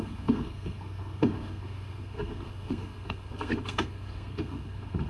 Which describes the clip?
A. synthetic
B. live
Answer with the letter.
A